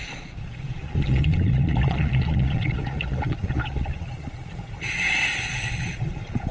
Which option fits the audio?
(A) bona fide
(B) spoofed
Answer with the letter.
B